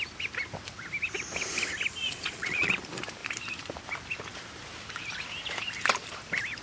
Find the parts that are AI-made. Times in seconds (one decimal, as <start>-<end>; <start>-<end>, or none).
2.0-2.7

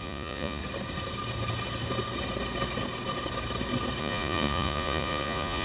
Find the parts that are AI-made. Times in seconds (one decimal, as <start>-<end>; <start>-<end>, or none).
0.0-0.6; 4.0-5.6

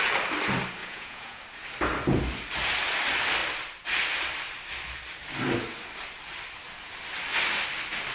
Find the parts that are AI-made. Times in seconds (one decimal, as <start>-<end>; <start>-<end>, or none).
0.8-1.4

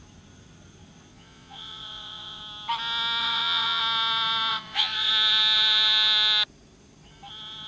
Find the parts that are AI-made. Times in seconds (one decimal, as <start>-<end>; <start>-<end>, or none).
1.1-2.4; 3.2-3.8; 4.5-5.1

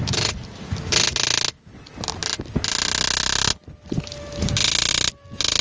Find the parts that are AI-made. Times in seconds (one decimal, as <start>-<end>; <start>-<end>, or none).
none

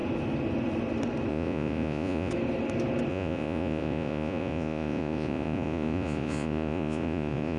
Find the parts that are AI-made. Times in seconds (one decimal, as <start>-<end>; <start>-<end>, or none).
1.3-2.3; 3.1-7.6